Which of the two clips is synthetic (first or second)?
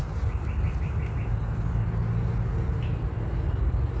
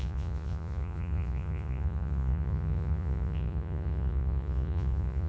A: second